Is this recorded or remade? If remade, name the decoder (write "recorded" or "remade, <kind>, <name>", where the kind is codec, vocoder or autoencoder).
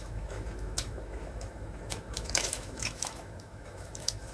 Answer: remade, autoencoder, DAC-VAE